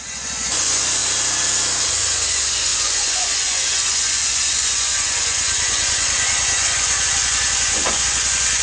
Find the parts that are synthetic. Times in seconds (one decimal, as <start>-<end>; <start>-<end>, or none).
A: 0.0-1.0; 1.9-8.6